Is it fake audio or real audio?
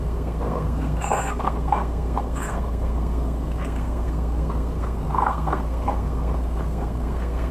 fake